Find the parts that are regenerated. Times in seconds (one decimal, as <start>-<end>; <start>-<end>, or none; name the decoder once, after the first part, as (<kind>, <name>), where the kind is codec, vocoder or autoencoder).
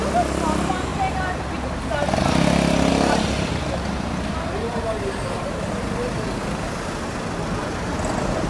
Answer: none